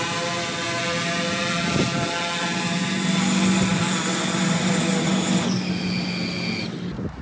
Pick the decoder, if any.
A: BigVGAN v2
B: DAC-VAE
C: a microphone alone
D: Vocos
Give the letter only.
C